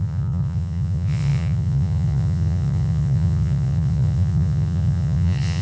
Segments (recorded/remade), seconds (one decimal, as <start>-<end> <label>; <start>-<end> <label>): 0.0-5.6 remade